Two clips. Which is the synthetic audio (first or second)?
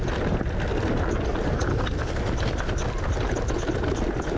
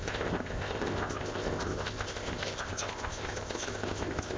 second